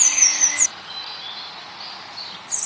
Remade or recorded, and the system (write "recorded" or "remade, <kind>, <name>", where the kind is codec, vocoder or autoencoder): recorded